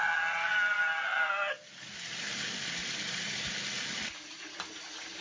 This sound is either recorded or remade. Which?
recorded